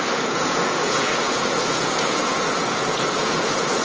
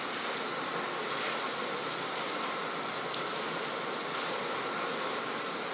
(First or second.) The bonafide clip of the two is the second